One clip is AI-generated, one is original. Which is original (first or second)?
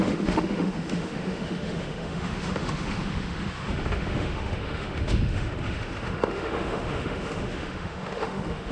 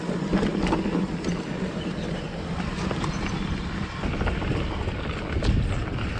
second